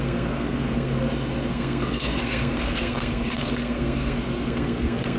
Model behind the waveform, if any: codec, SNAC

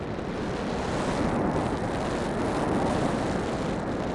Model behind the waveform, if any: none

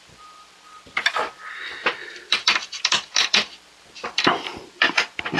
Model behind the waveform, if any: vocoder, BigVGAN v2